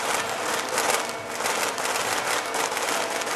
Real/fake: real